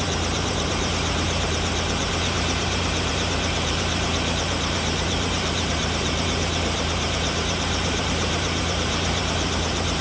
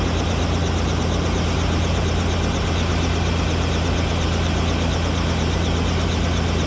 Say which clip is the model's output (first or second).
first